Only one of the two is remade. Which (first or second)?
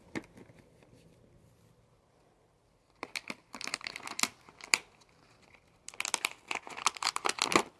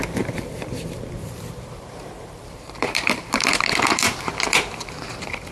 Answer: second